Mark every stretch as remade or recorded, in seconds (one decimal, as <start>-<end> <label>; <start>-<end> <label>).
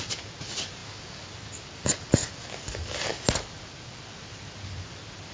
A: 0.0-5.3 recorded